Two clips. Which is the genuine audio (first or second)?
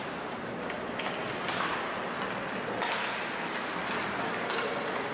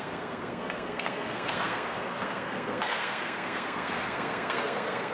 first